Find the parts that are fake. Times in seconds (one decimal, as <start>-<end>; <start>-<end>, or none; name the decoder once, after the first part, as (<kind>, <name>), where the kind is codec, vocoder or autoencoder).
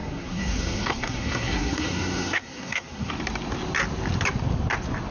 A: 0.0-3.1 (codec, SNAC)